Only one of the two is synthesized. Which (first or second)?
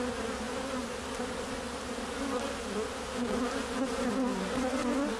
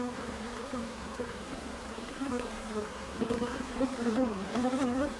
second